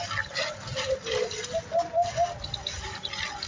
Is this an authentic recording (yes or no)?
yes